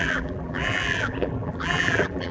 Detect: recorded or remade remade